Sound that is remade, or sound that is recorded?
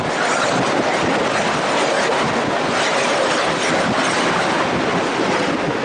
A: recorded